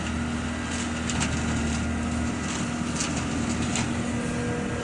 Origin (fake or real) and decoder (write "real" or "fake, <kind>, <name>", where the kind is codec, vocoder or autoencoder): real